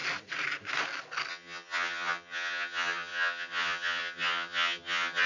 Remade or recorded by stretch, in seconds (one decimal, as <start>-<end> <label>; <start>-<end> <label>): 0.0-1.3 recorded; 1.3-5.3 remade